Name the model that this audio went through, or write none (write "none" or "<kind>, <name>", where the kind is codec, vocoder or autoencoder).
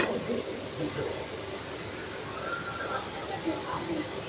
none